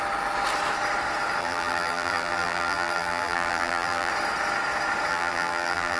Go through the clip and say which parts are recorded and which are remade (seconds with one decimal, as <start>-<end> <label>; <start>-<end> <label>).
0.0-1.4 recorded; 1.4-4.1 remade; 4.1-5.1 recorded; 5.1-6.0 remade